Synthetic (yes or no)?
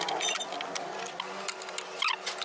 no